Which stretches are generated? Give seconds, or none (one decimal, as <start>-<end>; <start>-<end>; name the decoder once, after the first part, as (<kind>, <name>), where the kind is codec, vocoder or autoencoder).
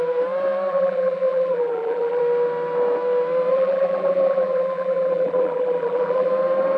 0.7-2.2 (vocoder, BigVGAN v2); 3.5-6.3